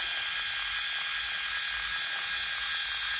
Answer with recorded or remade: recorded